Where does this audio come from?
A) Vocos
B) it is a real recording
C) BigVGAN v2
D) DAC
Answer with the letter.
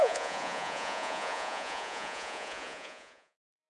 A